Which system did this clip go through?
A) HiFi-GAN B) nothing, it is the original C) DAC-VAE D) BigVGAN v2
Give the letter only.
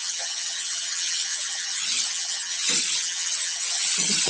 A